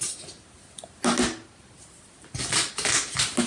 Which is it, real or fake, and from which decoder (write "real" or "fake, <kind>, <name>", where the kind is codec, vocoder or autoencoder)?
real